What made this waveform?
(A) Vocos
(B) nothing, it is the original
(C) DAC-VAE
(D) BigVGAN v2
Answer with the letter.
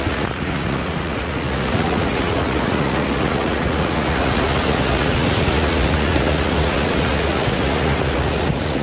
A